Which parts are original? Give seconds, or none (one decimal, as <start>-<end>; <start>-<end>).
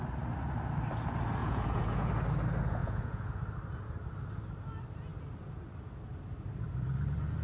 0.0-1.4; 2.1-2.8; 3.4-7.4